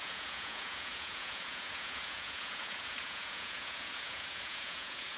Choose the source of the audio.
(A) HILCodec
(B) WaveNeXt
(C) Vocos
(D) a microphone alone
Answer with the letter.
C